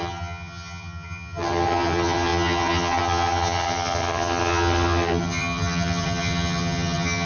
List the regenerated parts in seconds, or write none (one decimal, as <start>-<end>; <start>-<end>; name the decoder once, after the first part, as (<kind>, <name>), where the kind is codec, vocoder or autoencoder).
0.0-7.2 (vocoder, HiFi-GAN)